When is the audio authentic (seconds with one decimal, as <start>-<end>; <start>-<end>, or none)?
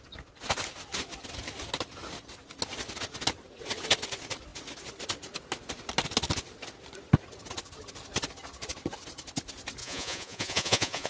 0.0-9.8